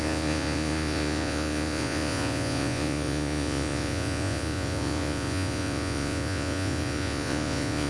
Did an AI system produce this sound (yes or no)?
yes